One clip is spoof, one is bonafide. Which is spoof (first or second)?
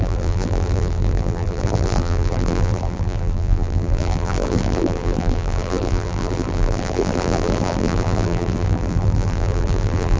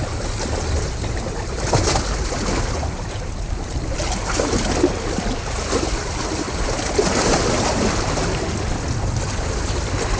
first